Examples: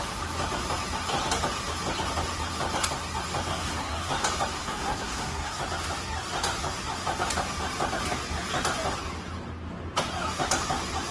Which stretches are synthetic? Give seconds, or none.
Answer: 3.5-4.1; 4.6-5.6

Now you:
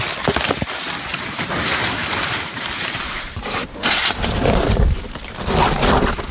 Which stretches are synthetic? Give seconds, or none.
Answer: 1.1-4.9

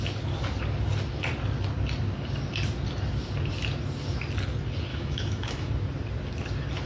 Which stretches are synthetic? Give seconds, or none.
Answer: 4.9-5.7